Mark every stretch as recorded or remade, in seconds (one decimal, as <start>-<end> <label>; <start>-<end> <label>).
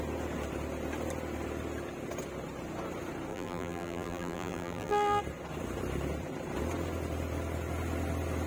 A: 0.0-3.3 recorded; 3.3-5.2 remade; 5.2-8.5 recorded